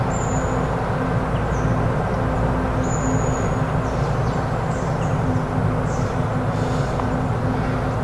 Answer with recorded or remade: recorded